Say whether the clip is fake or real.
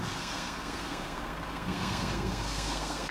fake